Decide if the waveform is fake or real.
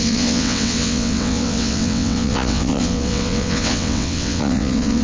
fake